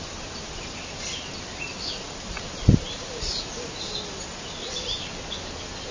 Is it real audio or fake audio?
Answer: real